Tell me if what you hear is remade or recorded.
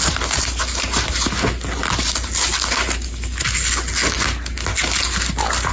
recorded